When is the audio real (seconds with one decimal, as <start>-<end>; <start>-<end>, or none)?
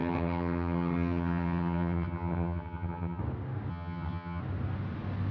3.2-3.7; 4.4-5.3